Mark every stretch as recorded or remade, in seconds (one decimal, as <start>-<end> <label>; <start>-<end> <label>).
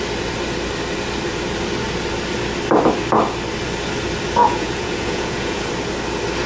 0.0-4.4 recorded; 4.4-5.6 remade; 5.6-6.5 recorded